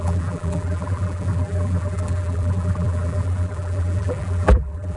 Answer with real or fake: fake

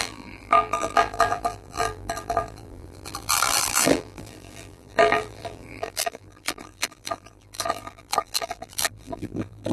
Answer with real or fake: fake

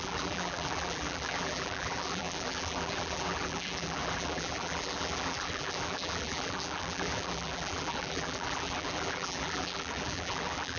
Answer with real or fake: fake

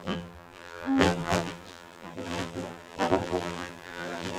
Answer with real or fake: fake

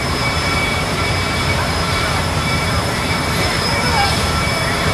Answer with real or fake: fake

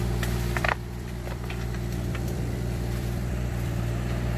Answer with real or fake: fake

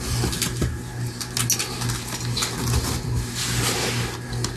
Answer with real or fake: real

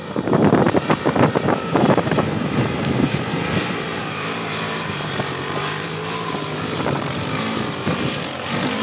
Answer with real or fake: fake